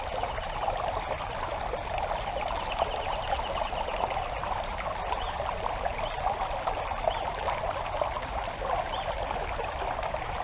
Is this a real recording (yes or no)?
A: yes